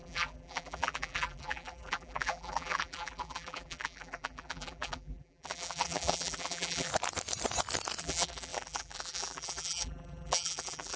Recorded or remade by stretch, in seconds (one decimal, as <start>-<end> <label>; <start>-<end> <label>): 0.0-6.9 remade; 6.9-8.0 recorded; 8.0-11.0 remade